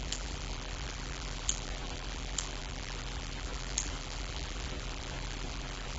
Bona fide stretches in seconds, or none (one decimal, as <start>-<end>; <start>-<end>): none